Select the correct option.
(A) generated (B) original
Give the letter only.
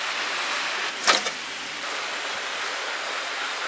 B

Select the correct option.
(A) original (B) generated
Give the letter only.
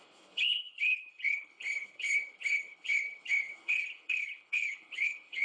B